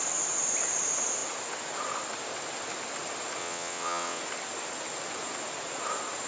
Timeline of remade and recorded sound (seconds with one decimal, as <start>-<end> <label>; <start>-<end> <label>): 0.0-3.4 recorded; 3.4-4.2 remade; 4.2-6.3 recorded